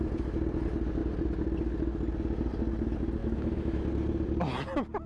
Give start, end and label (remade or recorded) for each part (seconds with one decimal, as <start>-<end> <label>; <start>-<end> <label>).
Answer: 0.0-3.2 recorded; 3.2-3.8 remade; 3.8-5.1 recorded

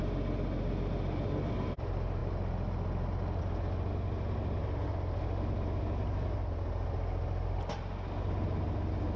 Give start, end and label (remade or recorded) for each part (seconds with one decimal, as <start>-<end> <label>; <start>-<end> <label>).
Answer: 0.0-9.2 recorded

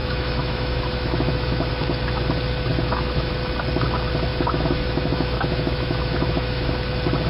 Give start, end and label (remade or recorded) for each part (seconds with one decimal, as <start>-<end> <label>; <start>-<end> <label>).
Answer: 0.0-1.7 remade; 1.7-2.7 recorded; 2.7-3.3 remade; 3.3-4.3 recorded; 4.3-6.7 remade; 6.7-7.3 recorded

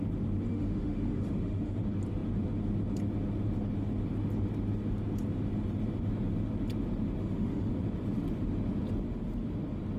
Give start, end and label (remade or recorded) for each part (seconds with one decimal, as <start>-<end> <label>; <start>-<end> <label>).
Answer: 0.0-0.5 recorded; 0.5-1.8 remade; 1.8-7.2 recorded; 7.2-7.7 remade; 7.7-10.0 recorded

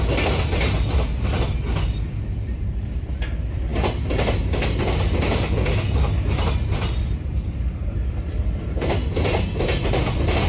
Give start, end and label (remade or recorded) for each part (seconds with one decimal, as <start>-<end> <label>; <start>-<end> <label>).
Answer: 0.0-10.5 recorded

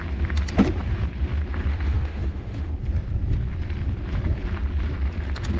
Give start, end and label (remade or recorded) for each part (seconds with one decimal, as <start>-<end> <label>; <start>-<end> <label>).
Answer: 0.0-1.7 recorded; 1.7-2.7 remade; 2.7-5.6 recorded